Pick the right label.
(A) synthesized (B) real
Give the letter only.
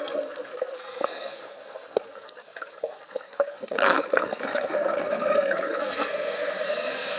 A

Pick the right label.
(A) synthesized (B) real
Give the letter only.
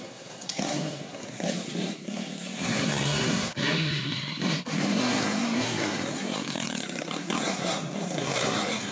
A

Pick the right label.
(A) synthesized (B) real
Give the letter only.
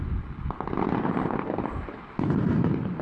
B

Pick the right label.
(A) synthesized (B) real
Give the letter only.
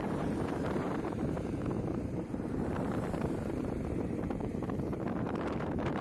A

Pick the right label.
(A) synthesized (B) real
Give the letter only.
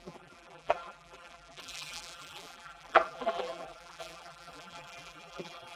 A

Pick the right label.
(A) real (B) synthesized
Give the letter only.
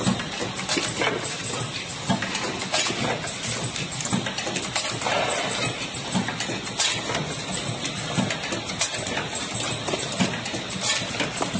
A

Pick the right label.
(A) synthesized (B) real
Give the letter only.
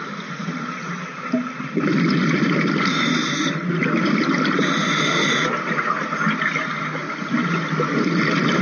B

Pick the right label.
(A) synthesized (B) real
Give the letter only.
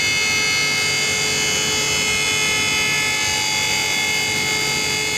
B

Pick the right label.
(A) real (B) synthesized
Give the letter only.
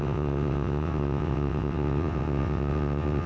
B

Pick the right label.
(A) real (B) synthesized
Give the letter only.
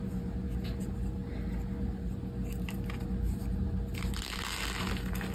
A